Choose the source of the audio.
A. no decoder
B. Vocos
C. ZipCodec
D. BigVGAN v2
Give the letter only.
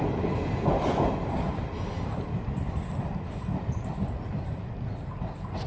A